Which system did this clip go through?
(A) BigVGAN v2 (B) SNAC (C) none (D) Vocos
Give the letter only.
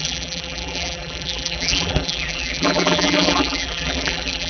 A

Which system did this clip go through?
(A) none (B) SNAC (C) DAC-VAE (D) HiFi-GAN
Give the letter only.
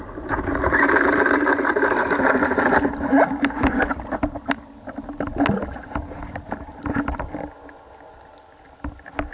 A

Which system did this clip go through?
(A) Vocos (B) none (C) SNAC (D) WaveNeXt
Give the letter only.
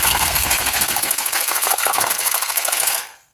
C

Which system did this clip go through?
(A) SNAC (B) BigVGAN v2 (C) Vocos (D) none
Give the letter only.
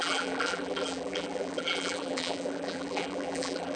B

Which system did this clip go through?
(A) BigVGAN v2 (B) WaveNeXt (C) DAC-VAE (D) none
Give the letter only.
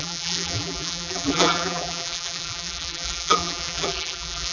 A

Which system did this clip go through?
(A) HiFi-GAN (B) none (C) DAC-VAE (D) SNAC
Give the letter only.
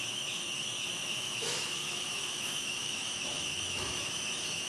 C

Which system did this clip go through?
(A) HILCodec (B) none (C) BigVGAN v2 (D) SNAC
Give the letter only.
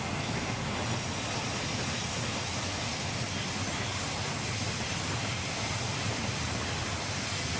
B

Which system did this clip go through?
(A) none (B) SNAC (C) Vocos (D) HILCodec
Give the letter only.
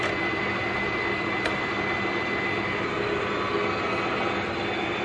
A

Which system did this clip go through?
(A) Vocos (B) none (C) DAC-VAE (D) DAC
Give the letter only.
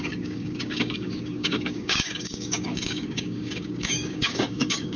D